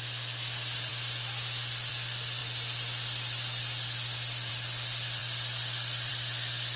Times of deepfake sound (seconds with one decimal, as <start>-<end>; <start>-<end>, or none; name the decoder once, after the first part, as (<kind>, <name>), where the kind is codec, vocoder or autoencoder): none